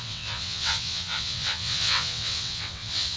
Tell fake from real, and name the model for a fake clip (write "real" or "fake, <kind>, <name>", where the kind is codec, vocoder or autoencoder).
fake, vocoder, WaveNeXt